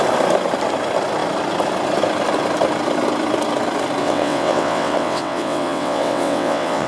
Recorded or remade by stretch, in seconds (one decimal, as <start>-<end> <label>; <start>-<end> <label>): 0.0-4.0 recorded; 4.0-6.9 remade

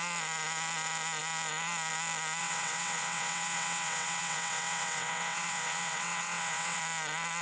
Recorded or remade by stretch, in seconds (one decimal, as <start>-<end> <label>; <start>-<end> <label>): 0.0-2.4 recorded; 2.4-6.8 remade; 6.8-7.4 recorded